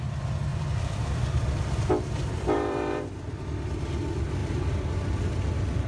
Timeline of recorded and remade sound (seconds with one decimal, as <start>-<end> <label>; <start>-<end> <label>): 0.0-0.5 recorded; 0.5-3.4 remade; 3.4-5.9 recorded